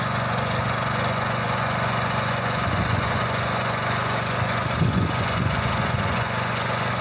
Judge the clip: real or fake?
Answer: fake